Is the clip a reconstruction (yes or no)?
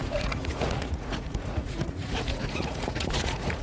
yes